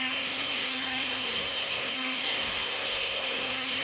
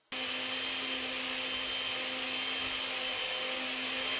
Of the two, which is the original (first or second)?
second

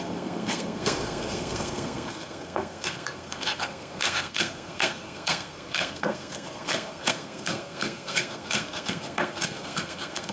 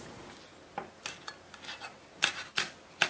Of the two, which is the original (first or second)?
second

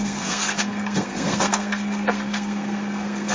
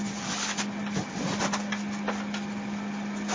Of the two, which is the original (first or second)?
second